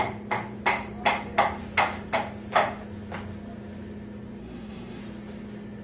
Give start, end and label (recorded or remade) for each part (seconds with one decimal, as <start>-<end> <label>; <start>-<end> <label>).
0.0-4.4 recorded; 4.4-5.0 remade; 5.0-5.8 recorded